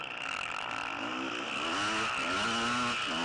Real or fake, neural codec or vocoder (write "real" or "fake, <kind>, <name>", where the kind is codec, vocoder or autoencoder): real